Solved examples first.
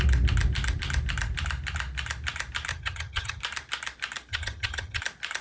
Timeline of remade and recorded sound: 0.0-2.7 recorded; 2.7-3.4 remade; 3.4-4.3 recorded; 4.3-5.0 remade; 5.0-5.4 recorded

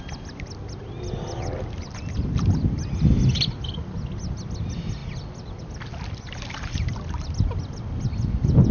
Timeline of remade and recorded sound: 0.0-8.7 recorded

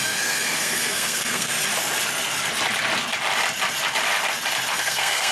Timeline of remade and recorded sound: 0.0-1.5 remade; 1.5-4.7 recorded; 4.7-5.3 remade